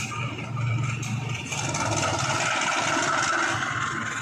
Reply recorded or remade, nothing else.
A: recorded